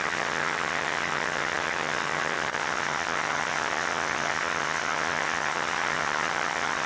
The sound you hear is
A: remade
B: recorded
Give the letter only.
A